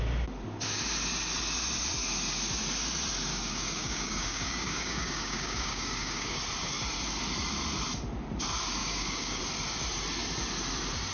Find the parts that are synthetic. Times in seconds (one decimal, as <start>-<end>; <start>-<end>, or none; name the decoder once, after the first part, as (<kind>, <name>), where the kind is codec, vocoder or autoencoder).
3.3-6.4 (codec, DAC); 8.8-9.4